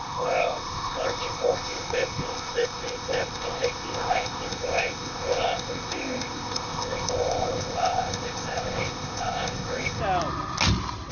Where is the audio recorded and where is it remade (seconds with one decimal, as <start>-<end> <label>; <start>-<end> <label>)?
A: 0.0-10.0 remade; 10.0-11.1 recorded

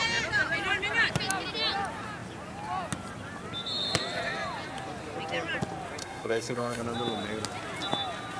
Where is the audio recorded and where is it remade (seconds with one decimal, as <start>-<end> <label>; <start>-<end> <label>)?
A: 0.0-6.0 recorded; 6.0-6.8 remade; 6.8-8.4 recorded